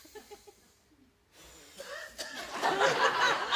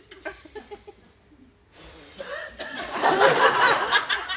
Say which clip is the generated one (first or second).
second